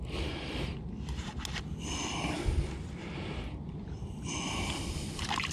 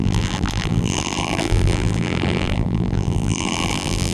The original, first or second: first